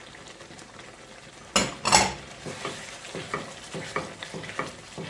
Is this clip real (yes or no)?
yes